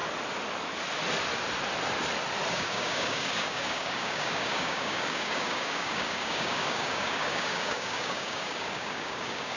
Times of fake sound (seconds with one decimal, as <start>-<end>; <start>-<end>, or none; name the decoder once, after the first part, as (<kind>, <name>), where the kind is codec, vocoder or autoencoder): 2.5-9.6 (codec, DAC)